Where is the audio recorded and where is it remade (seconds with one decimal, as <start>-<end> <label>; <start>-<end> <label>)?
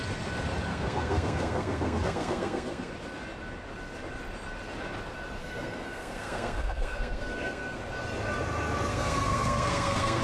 0.0-0.7 recorded; 0.7-2.9 remade; 2.9-5.4 recorded; 5.4-7.8 remade; 7.8-8.9 recorded; 8.9-10.2 remade